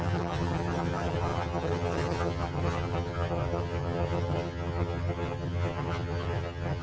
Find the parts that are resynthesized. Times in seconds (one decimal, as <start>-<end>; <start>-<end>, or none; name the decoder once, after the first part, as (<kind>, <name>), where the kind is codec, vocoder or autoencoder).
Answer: 0.0-6.8 (vocoder, HiFi-GAN)